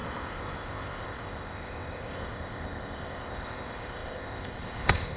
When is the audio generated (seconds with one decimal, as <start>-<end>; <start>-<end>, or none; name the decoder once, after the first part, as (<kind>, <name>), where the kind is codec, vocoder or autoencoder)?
0.0-5.2 (codec, ZipCodec)